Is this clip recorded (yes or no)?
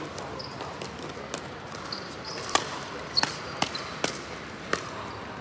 yes